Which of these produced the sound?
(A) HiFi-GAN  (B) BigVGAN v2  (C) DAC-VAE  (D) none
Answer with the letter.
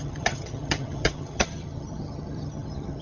A